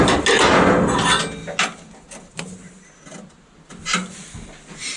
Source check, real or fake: real